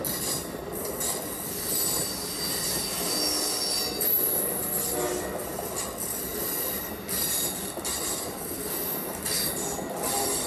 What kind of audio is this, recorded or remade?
recorded